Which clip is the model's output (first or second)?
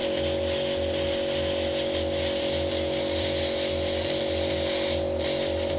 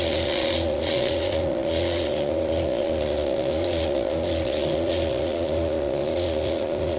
second